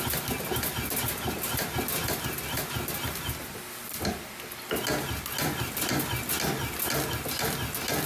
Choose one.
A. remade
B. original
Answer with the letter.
B